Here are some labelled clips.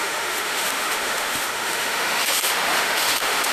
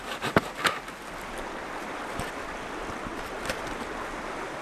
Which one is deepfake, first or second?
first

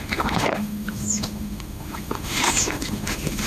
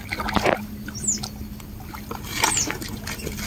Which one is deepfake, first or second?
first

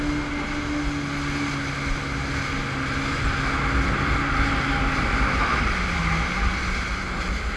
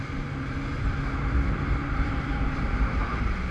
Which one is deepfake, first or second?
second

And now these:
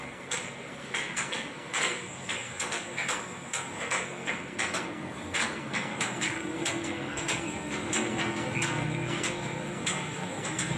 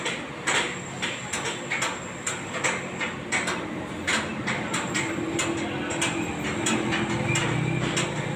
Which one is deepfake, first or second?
first